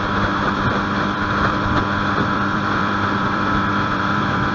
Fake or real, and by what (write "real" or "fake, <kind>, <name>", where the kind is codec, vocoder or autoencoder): fake, vocoder, BigVGAN v2